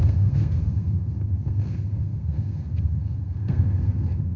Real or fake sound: fake